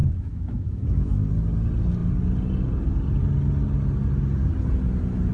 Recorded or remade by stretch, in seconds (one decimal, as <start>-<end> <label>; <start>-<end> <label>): 0.0-1.3 remade; 1.3-5.3 recorded